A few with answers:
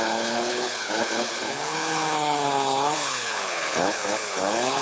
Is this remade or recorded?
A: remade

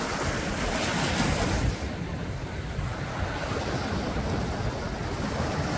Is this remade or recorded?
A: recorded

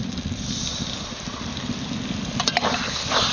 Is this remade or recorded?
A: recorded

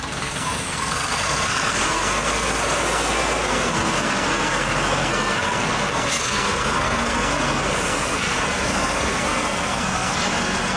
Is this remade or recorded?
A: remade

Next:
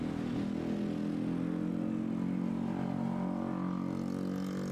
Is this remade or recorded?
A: recorded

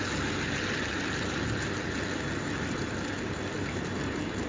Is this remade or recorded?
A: recorded